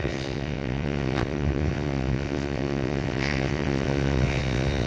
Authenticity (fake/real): fake